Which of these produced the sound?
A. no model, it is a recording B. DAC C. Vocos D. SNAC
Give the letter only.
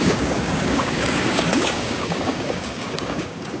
B